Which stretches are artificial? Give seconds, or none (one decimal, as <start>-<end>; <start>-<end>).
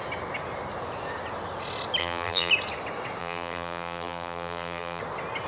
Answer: 2.0-2.5; 3.2-5.0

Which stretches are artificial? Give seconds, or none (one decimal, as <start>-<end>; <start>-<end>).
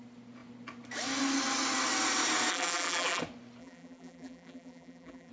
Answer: 2.5-3.2; 3.6-5.3